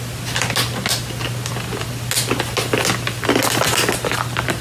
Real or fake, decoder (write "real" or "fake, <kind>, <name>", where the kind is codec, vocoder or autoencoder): real